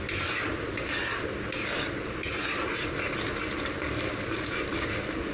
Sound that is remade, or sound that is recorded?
recorded